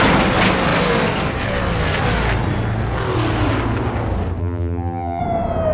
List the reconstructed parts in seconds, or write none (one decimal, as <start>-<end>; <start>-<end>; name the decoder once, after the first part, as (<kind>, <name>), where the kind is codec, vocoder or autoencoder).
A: 4.4-5.2 (vocoder, BigVGAN v2)